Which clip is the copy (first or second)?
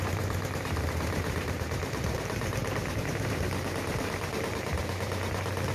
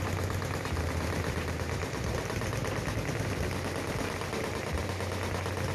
first